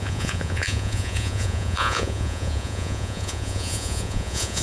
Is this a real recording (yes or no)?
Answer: no